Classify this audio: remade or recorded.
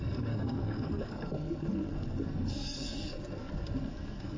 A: remade